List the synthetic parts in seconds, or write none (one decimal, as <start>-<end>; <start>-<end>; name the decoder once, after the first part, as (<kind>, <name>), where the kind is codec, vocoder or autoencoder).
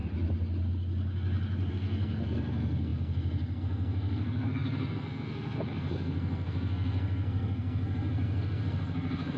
1.7-9.4 (codec, SNAC)